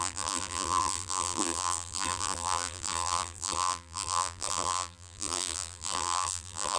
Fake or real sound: fake